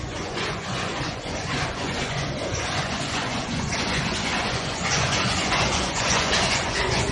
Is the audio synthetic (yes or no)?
yes